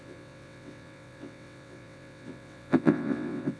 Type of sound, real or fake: fake